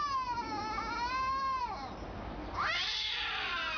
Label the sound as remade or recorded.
recorded